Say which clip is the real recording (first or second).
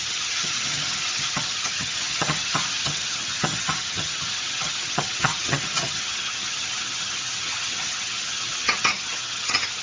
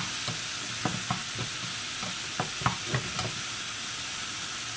second